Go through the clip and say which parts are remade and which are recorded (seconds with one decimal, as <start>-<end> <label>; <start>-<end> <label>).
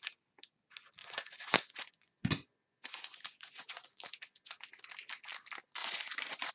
0.0-1.0 recorded; 1.0-4.5 remade; 4.5-5.8 recorded; 5.8-6.5 remade